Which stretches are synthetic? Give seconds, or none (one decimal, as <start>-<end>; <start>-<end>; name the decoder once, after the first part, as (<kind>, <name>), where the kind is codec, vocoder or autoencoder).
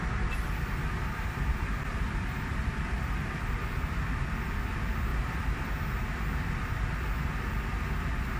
1.9-3.6 (vocoder, BigVGAN v2); 5.1-5.7